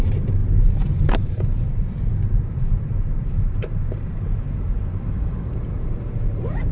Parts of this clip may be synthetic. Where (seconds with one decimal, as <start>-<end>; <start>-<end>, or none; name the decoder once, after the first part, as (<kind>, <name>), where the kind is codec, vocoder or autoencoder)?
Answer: 0.0-0.4 (vocoder, BigVGAN v2); 1.1-6.7